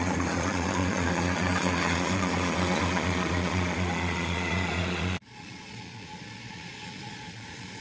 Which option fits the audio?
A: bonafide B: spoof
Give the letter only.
B